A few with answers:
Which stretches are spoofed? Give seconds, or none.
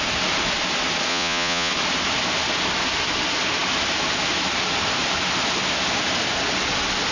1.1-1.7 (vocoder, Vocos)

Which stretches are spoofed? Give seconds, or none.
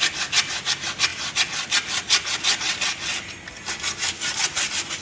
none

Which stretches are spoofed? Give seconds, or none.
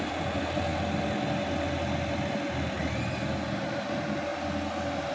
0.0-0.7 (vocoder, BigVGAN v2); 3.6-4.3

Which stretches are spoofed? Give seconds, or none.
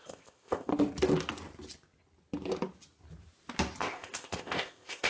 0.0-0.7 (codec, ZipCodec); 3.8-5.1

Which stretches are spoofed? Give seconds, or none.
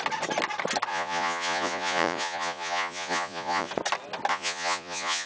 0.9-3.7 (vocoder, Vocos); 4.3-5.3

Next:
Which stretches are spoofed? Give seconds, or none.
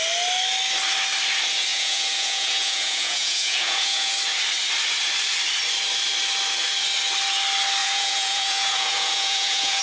1.7-4.1 (vocoder, Vocos); 7.8-9.8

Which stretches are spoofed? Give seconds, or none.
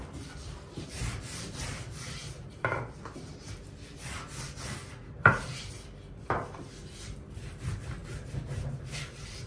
0.0-9.5 (vocoder, BigVGAN v2)